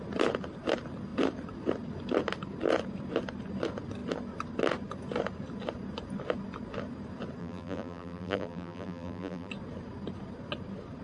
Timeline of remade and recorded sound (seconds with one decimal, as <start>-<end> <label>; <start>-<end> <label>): 0.0-7.4 recorded; 7.4-9.5 remade; 9.5-11.0 recorded